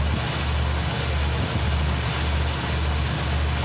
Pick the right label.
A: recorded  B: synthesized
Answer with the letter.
A